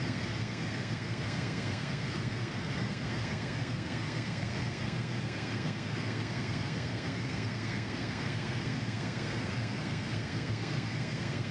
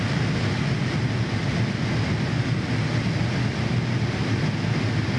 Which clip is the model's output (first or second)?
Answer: first